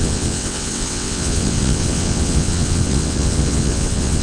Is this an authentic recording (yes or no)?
no